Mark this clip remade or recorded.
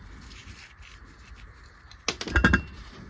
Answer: recorded